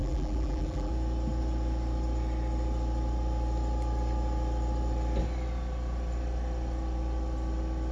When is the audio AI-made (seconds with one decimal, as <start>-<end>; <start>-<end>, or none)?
0.0-0.9